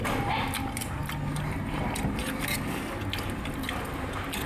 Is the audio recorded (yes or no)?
yes